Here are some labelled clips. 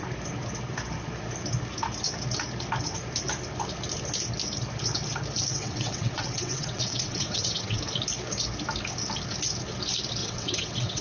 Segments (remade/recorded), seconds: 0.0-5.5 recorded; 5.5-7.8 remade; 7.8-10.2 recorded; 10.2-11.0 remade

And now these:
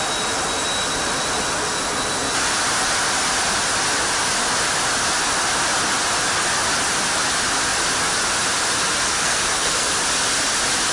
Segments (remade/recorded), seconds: 0.0-9.1 recorded; 9.1-9.9 remade; 9.9-10.9 recorded